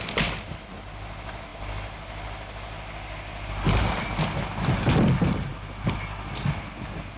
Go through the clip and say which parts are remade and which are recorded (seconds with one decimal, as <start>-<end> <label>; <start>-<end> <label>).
0.0-7.2 recorded